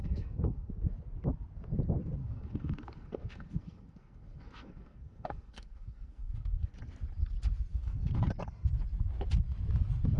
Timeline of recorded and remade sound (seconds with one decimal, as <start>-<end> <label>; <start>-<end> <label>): 0.0-0.7 remade; 0.7-2.2 recorded; 2.2-6.7 remade; 6.7-7.7 recorded; 7.7-8.3 remade; 8.3-10.2 recorded